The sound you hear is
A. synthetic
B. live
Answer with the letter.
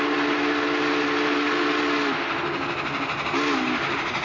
B